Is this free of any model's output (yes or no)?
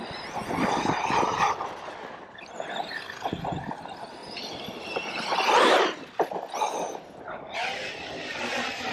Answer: yes